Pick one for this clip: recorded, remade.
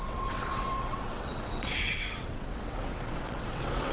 remade